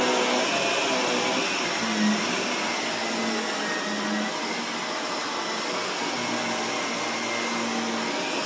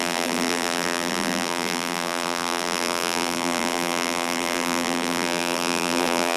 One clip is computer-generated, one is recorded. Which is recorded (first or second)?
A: first